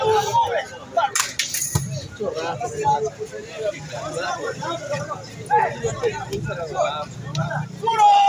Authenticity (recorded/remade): recorded